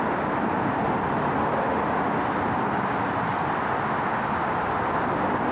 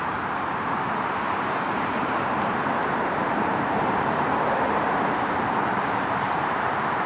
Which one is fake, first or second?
second